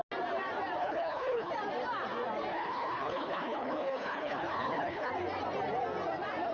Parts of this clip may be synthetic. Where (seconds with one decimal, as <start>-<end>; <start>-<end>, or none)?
0.8-1.5; 2.5-5.1